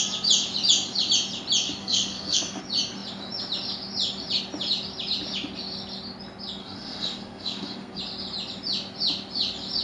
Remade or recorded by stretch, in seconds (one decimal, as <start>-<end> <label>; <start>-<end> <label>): 0.0-1.8 recorded; 1.8-2.6 remade; 2.6-6.6 recorded; 6.6-8.0 remade; 8.0-9.8 recorded